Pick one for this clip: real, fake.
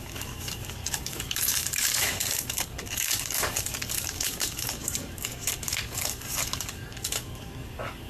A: fake